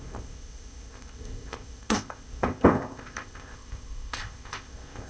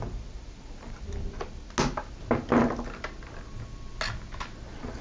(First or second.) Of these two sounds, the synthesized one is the first